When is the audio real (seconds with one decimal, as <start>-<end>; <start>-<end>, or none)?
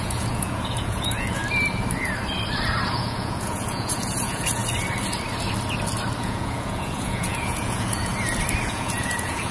1.4-2.9; 4.6-6.2; 8.1-8.6